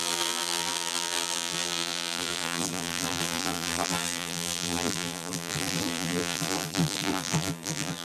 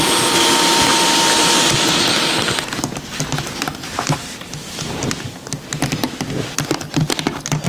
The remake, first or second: first